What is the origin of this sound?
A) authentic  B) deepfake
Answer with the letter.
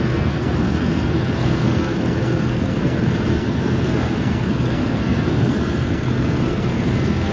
B